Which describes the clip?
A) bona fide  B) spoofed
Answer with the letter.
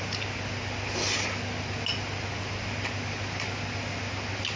A